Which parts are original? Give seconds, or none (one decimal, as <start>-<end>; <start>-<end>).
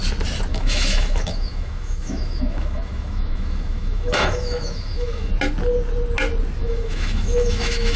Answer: 0.0-0.5; 5.3-6.6